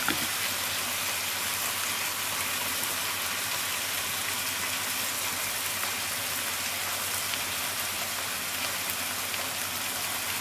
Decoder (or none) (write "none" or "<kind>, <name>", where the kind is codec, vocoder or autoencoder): none